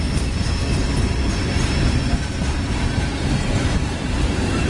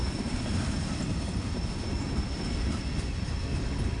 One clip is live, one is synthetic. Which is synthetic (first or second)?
second